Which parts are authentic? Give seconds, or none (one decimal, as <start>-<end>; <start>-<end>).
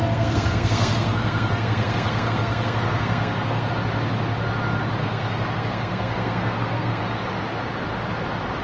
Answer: 3.7-5.0; 7.0-8.6